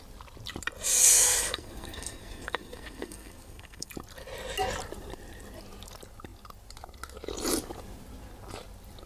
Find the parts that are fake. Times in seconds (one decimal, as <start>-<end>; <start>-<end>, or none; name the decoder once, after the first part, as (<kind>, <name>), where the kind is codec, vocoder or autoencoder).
1.0-3.9 (codec, SNAC)